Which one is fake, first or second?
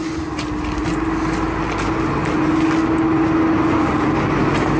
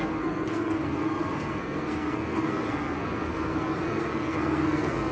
second